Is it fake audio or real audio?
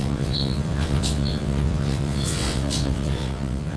fake